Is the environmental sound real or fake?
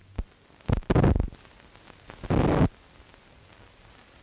real